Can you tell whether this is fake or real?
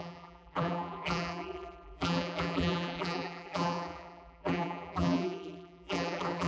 fake